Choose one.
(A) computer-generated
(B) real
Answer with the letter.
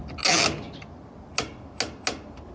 B